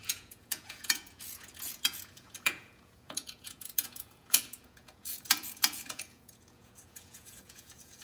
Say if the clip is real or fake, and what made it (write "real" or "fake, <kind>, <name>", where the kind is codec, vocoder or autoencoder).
fake, vocoder, Vocos